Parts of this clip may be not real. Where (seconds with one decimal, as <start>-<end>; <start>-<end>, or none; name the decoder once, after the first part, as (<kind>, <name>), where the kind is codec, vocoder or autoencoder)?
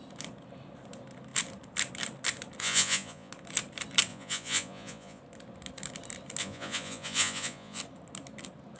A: 2.6-3.3 (vocoder, Vocos); 4.1-5.2; 6.4-7.8